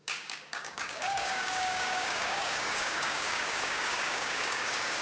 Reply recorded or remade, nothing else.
remade